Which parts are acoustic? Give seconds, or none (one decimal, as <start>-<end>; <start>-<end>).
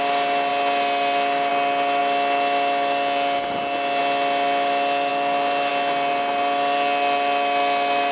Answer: 0.0-8.1